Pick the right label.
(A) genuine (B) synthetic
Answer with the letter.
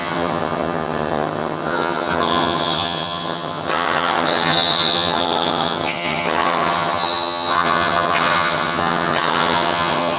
B